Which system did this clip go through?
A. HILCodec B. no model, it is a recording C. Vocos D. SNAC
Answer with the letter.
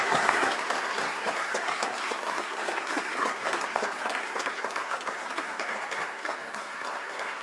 D